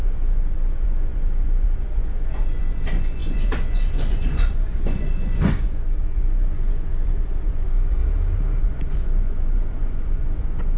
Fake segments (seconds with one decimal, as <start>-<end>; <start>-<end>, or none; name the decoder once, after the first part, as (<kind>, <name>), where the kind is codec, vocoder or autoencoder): 0.0-8.0 (vocoder, Vocos); 8.6-10.8